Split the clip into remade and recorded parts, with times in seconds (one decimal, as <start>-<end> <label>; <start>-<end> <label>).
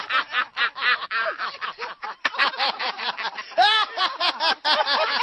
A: 0.0-0.9 recorded; 0.9-4.0 remade; 4.0-5.2 recorded